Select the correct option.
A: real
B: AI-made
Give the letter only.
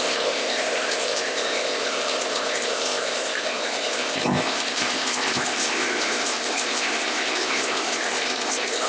B